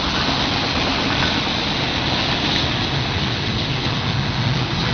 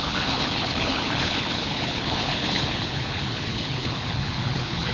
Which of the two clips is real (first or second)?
first